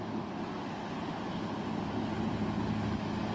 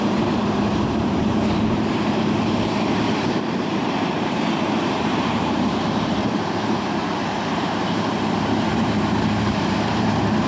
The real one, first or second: first